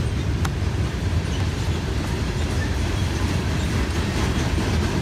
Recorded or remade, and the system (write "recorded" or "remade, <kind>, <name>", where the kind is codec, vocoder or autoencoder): recorded